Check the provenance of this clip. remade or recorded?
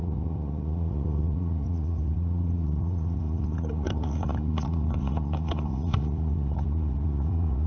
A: remade